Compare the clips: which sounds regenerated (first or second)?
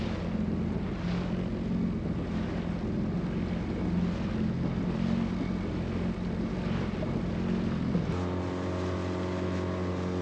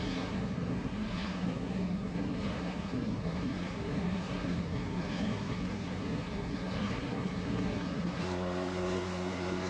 second